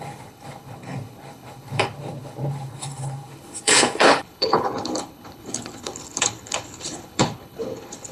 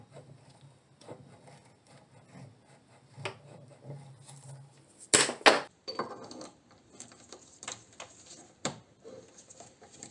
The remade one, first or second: first